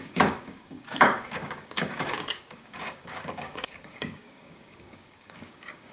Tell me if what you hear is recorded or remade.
remade